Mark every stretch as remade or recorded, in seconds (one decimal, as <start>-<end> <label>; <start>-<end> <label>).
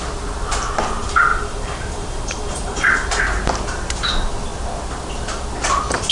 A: 0.0-1.3 recorded; 1.3-3.2 remade; 3.2-6.1 recorded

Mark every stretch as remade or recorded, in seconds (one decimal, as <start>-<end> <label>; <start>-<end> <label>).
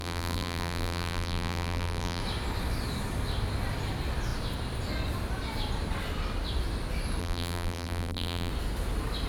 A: 0.0-2.2 remade; 2.2-7.2 recorded; 7.2-8.5 remade; 8.5-9.3 recorded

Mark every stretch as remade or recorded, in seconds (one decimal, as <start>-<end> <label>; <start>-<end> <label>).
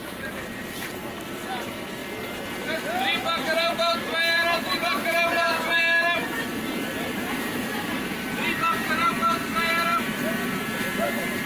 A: 0.0-2.0 remade; 2.0-3.4 recorded; 3.4-11.5 remade